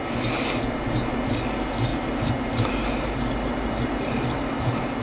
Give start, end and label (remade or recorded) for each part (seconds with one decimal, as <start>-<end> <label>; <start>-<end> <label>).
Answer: 0.0-1.9 recorded; 1.9-5.0 remade